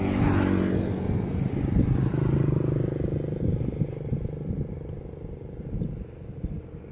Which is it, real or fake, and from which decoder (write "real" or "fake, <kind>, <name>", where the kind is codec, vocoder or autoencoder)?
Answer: real